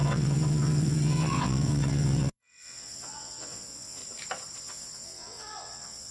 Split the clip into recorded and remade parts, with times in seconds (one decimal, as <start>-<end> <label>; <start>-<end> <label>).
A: 0.0-4.0 remade; 4.0-4.6 recorded; 4.6-6.1 remade

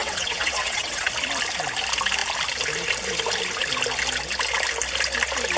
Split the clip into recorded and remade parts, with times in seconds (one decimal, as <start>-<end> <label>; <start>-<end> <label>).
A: 0.0-1.1 remade; 1.1-5.6 recorded